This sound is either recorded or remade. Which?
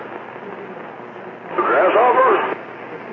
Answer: recorded